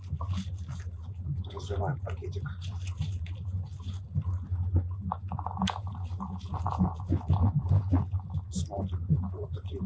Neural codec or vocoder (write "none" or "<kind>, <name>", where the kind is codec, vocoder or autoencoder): vocoder, BigVGAN v2